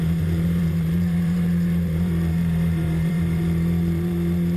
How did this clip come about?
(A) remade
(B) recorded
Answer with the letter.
A